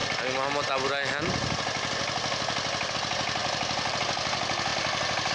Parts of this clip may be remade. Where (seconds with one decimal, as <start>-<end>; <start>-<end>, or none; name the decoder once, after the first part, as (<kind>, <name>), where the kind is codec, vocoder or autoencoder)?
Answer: 3.4-4.0 (vocoder, BigVGAN v2)